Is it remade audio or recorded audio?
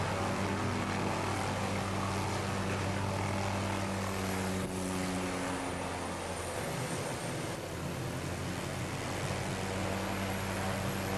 recorded